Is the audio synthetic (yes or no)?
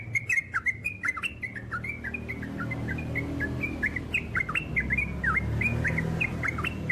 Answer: no